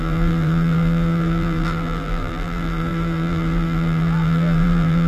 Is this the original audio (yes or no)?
no